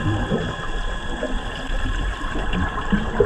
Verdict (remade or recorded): recorded